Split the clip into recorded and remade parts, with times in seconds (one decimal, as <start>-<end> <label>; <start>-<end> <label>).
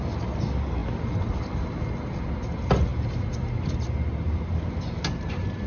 0.0-2.9 recorded; 2.9-4.6 remade; 4.6-5.7 recorded